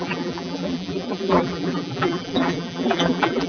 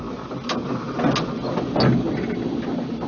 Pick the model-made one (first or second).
first